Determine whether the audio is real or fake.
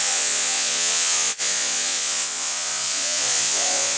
fake